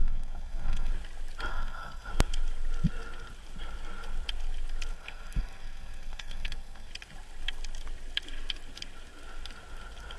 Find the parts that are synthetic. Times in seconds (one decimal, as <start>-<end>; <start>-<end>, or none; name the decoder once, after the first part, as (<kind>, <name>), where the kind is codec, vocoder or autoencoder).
0.0-0.9 (codec, SNAC); 1.5-2.1; 4.9-6.9